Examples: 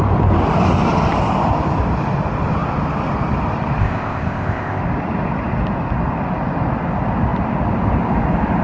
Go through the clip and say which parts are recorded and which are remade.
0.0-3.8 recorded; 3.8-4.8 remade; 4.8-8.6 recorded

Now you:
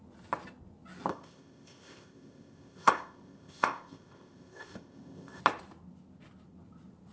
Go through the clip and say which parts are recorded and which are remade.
0.0-1.1 recorded; 1.1-5.4 remade; 5.4-7.1 recorded

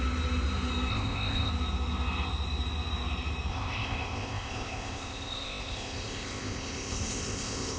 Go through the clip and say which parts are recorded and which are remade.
0.0-0.9 recorded; 0.9-1.5 remade; 1.5-3.5 recorded; 3.5-7.8 remade

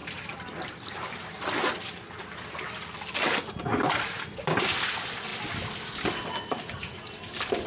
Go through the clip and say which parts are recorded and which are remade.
0.0-7.7 recorded

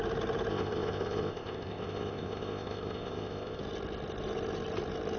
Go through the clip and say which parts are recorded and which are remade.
0.0-0.5 recorded; 0.5-3.6 remade; 3.6-5.2 recorded

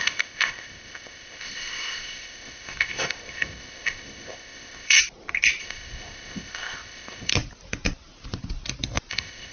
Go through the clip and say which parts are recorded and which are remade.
0.0-5.0 remade; 5.0-5.6 recorded; 5.6-7.3 remade; 7.3-9.1 recorded; 9.1-9.5 remade